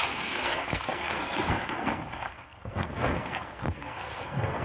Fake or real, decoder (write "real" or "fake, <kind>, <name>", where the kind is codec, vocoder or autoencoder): fake, codec, SNAC